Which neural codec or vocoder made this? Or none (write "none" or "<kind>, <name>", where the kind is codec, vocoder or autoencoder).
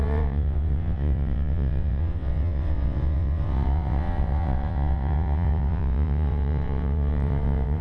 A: vocoder, WaveNeXt